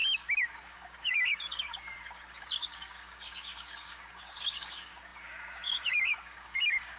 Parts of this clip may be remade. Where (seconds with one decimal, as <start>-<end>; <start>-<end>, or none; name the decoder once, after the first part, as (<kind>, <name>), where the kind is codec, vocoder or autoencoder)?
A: 0.0-7.0 (codec, DAC)